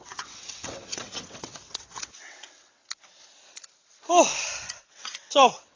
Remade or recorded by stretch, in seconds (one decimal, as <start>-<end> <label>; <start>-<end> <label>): 0.0-2.8 remade; 2.8-4.8 recorded; 4.8-5.8 remade